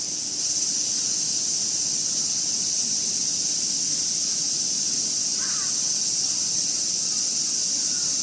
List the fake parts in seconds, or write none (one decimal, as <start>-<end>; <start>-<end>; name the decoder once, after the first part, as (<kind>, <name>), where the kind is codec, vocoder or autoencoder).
4.3-4.8 (vocoder, Vocos)